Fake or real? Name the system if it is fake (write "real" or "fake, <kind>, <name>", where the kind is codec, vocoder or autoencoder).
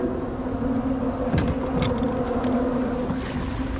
real